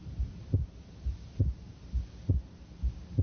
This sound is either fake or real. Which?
real